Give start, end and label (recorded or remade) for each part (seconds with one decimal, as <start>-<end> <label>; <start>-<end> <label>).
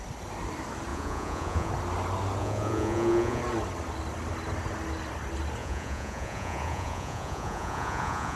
0.0-0.9 recorded; 0.9-1.7 remade; 1.7-2.4 recorded; 2.4-3.4 remade; 3.4-5.6 recorded; 5.6-8.4 remade